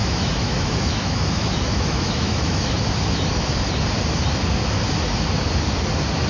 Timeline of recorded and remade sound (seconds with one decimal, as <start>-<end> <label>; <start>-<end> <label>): 0.0-2.7 remade; 2.7-6.3 recorded